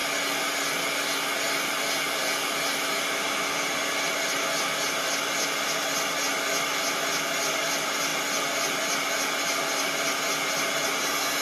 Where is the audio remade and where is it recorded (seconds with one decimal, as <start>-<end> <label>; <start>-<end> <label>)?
0.0-11.4 recorded